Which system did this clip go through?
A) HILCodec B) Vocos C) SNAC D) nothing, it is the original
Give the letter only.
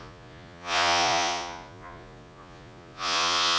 B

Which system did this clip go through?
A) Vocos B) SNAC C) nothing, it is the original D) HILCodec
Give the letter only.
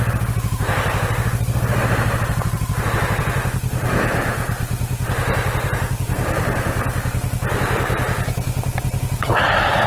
C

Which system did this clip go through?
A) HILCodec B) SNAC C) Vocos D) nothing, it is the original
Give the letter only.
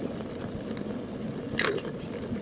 D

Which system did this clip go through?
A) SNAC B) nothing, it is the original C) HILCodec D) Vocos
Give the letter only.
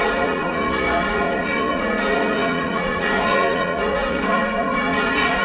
D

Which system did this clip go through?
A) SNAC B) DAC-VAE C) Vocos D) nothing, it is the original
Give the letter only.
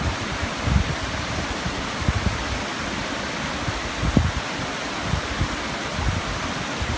D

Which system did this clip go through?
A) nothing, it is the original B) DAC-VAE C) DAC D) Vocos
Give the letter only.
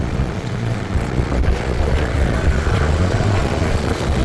D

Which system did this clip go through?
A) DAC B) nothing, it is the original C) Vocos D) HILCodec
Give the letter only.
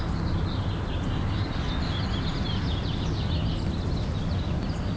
B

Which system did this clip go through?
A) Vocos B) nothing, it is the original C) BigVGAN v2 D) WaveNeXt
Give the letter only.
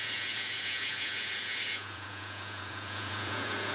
A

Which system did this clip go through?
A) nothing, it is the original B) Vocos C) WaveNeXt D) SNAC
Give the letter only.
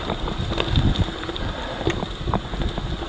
A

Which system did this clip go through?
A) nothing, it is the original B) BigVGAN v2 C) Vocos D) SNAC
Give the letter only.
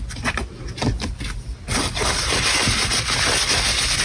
A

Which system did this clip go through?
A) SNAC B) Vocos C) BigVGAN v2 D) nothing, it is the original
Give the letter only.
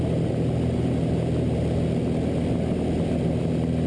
D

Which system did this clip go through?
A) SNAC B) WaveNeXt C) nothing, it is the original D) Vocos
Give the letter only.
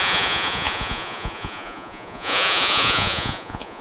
D